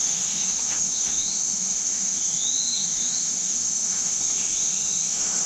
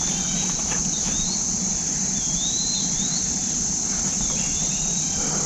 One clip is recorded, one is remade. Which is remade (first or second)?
first